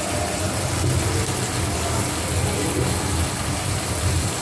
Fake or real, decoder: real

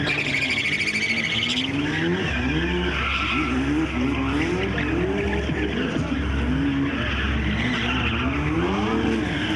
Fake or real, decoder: real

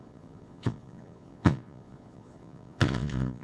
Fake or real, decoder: fake, vocoder, Vocos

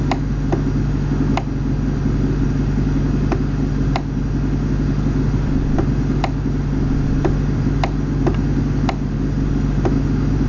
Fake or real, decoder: real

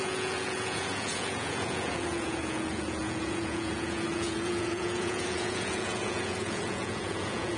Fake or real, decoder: fake, vocoder, Vocos